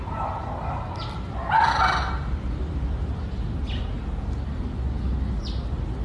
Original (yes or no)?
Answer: yes